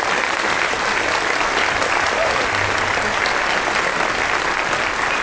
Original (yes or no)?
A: yes